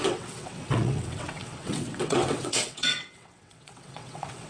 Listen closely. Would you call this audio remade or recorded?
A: remade